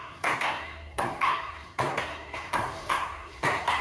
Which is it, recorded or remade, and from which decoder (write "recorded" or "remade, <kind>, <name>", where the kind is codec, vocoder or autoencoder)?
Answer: remade, codec, SNAC